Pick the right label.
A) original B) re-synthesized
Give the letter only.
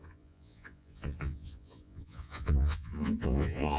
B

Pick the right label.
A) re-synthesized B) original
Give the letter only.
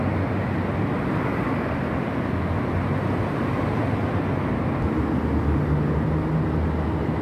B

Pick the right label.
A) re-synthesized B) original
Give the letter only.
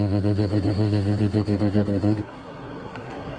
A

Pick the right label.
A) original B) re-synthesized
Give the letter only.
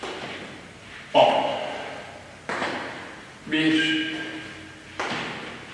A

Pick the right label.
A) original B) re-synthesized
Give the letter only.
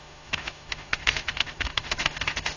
B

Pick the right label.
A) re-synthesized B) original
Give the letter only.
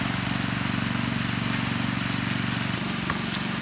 B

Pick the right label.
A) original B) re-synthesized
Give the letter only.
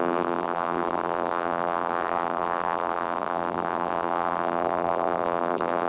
B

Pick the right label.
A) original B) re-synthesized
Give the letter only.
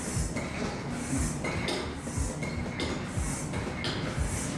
A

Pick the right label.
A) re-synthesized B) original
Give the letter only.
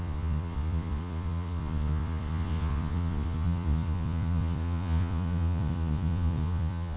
A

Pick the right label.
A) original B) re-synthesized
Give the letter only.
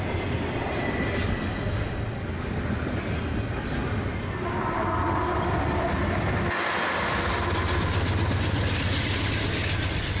A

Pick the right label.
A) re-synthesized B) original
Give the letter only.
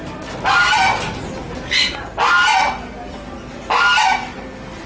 B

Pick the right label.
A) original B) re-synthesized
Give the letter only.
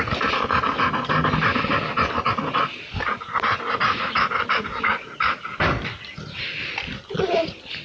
A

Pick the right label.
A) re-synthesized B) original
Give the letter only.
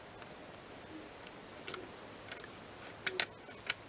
B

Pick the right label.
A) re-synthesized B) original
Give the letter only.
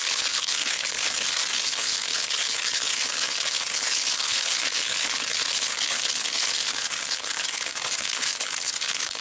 A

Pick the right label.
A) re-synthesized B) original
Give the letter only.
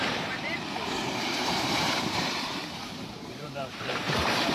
A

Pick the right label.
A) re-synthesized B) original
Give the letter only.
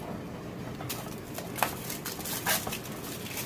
B